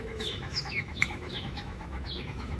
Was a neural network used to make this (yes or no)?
yes